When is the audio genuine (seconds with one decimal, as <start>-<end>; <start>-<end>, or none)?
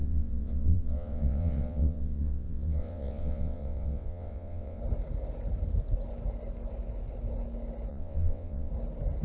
4.8-7.9; 8.7-9.2